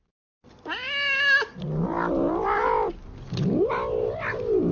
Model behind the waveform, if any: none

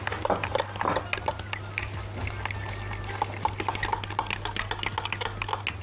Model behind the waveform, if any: none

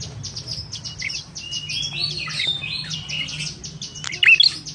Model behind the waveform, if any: none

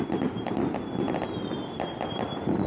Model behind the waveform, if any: none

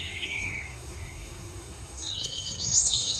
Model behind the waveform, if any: codec, SNAC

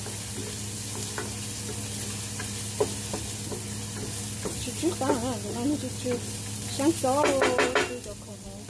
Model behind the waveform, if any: none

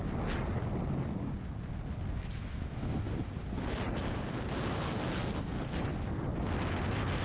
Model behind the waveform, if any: none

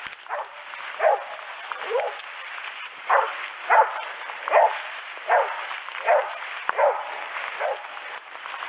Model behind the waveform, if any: none